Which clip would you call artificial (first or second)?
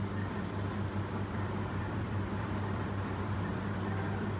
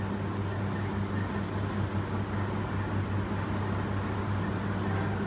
first